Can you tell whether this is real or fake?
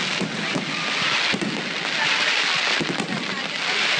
real